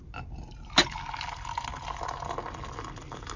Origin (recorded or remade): recorded